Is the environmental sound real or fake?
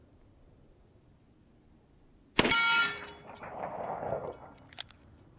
real